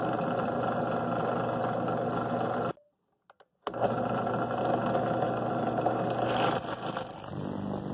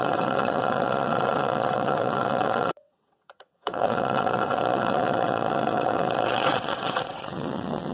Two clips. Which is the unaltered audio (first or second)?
first